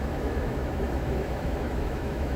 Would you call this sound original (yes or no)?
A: no